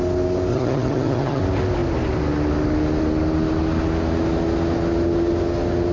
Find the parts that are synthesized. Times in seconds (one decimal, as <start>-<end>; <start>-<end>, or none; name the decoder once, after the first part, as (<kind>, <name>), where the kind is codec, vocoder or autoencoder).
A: 0.5-1.4 (vocoder, HiFi-GAN)